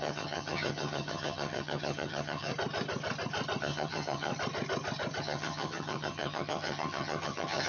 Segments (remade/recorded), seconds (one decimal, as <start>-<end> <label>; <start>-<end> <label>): 0.0-2.5 remade; 2.5-3.6 recorded; 3.6-4.3 remade; 4.3-5.2 recorded; 5.2-7.7 remade